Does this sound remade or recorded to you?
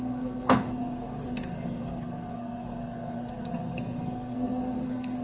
remade